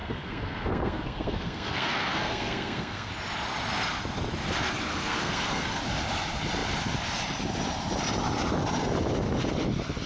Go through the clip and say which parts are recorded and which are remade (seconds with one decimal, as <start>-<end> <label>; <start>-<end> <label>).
0.0-3.1 remade; 3.1-4.9 recorded; 4.9-5.8 remade; 5.8-10.1 recorded